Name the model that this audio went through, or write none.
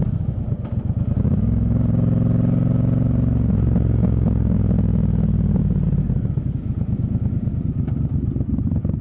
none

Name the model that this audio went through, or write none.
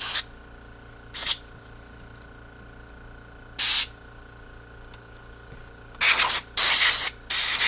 none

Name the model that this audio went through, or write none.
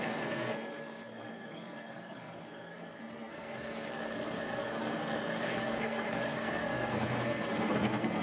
codec, SNAC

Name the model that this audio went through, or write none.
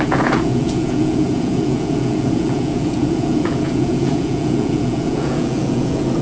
vocoder, Vocos